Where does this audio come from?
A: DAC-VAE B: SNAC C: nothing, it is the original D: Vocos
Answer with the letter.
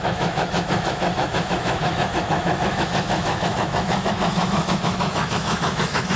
A